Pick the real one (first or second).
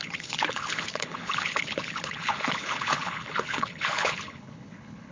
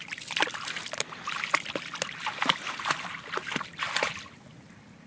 second